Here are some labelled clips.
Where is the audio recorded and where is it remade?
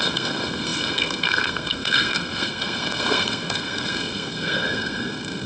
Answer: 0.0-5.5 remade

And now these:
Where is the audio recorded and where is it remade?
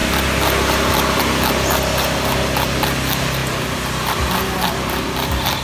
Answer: 0.0-5.6 recorded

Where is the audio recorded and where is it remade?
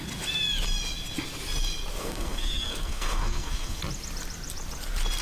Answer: 0.0-2.0 recorded; 2.0-3.8 remade; 3.8-5.2 recorded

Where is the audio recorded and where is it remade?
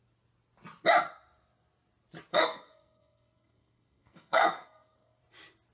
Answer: 0.0-2.3 recorded; 2.3-5.2 remade; 5.2-5.7 recorded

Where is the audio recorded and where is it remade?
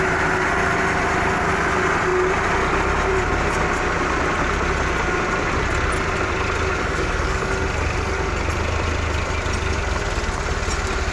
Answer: 0.0-6.7 recorded; 6.7-7.5 remade; 7.5-11.1 recorded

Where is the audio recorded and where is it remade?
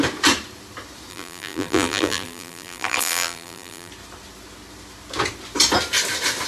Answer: 0.0-1.1 recorded; 1.1-3.9 remade; 3.9-6.5 recorded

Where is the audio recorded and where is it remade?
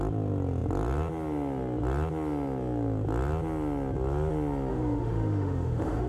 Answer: 0.0-4.7 recorded; 4.7-6.1 remade